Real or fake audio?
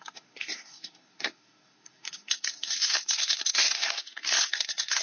fake